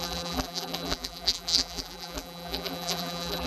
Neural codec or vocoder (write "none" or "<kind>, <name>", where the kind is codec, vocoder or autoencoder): vocoder, BigVGAN v2